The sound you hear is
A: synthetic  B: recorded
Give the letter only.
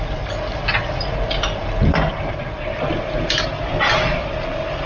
B